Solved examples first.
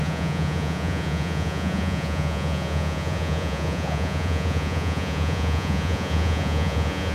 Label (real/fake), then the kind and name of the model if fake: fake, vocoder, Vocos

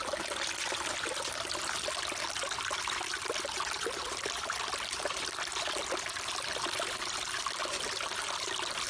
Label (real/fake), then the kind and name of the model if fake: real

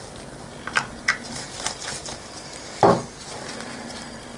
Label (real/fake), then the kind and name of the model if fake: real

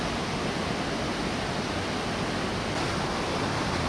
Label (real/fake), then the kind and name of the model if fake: real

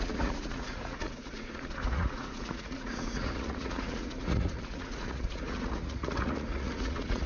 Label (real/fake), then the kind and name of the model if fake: fake, vocoder, Vocos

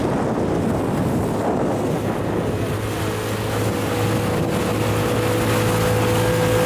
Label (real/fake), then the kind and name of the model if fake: real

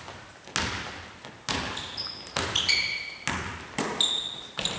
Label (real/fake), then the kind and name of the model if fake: real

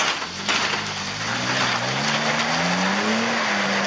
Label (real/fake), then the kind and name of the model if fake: real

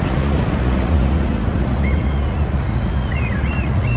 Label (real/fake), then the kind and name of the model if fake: fake, vocoder, Vocos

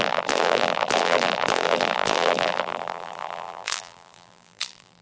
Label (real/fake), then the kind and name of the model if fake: fake, vocoder, BigVGAN v2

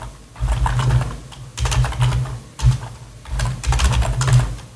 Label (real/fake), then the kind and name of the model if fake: real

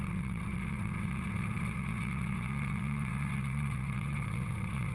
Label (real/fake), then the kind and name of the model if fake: fake, vocoder, WaveNeXt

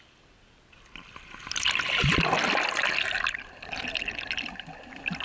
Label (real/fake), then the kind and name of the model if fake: real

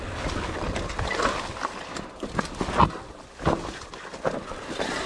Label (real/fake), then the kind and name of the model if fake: real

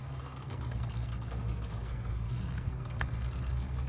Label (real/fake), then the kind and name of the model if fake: fake, codec, SNAC